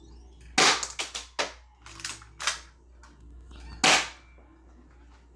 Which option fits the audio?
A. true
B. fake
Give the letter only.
A